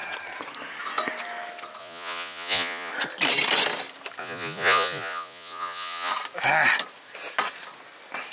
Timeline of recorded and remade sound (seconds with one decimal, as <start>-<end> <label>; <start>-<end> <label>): 0.0-1.8 recorded; 1.8-2.9 remade; 2.9-4.2 recorded; 4.2-6.1 remade; 6.1-8.3 recorded